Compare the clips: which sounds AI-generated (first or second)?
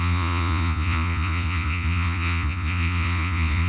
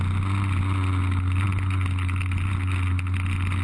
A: first